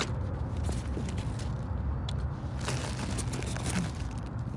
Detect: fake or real real